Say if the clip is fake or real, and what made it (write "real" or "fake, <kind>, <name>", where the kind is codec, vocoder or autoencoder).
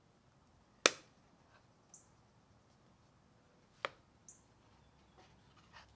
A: real